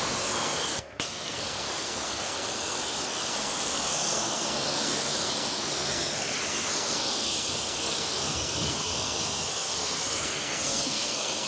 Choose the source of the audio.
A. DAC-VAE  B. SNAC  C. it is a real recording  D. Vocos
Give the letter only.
B